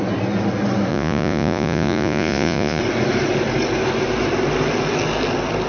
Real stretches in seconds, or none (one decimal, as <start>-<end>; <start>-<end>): 0.0-0.9; 2.8-5.7